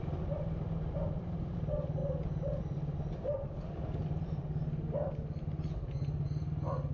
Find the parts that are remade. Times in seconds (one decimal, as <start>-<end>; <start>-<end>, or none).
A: 4.0-4.6